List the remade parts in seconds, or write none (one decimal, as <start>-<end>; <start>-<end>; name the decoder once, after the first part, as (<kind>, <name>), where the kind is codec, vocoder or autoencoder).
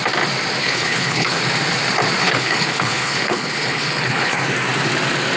0.6-1.4 (codec, HILCodec); 2.2-4.4